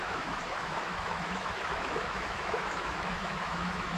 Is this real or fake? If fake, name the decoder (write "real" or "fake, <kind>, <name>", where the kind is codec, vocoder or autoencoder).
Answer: fake, autoencoder, DAC-VAE